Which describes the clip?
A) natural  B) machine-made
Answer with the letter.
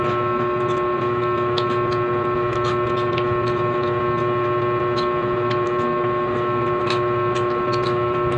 A